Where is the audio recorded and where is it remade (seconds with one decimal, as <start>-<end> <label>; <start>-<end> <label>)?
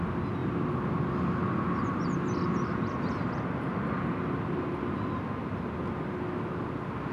0.0-0.4 recorded; 0.4-0.9 remade; 0.9-7.1 recorded